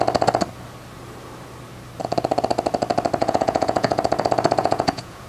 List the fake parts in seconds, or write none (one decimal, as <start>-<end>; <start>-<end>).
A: 3.2-4.0; 4.6-5.3